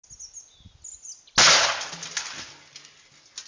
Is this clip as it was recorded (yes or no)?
yes